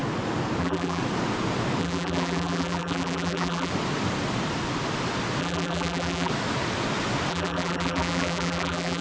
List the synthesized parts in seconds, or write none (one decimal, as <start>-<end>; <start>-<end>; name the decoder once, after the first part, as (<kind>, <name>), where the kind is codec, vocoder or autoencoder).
0.6-1.0 (vocoder, BigVGAN v2); 1.8-3.7; 5.4-6.3; 7.3-9.0

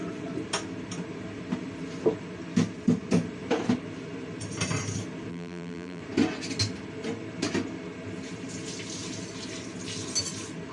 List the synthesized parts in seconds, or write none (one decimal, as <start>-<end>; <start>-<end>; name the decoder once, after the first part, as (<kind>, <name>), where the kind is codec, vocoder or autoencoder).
5.3-6.0 (vocoder, BigVGAN v2)

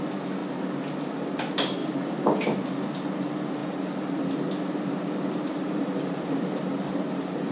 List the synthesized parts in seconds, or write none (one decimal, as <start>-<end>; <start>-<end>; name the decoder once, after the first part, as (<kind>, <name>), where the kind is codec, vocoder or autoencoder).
1.8-2.6 (vocoder, BigVGAN v2); 5.4-6.6

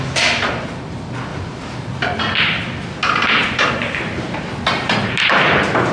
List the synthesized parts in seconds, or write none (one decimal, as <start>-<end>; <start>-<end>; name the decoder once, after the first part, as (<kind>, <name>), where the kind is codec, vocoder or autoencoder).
1.3-1.9 (vocoder, BigVGAN v2)

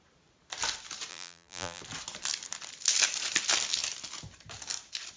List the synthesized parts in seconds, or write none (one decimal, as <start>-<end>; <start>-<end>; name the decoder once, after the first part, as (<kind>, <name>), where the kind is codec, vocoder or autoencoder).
1.1-1.8 (vocoder, BigVGAN v2)

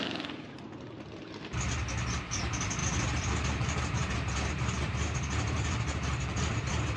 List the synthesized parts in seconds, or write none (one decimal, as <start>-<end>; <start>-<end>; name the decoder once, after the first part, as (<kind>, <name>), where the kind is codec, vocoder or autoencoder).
2.8-7.0 (vocoder, BigVGAN v2)

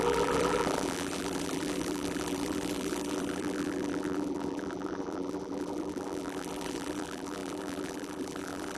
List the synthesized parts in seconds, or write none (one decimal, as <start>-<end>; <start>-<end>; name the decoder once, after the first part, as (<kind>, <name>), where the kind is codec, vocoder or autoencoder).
0.0-8.8 (vocoder, BigVGAN v2)

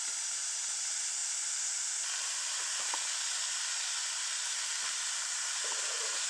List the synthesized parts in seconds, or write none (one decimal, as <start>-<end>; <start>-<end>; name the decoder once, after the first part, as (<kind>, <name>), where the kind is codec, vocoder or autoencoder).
none